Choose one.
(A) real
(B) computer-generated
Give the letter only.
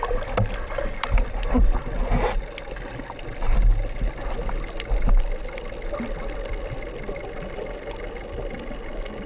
A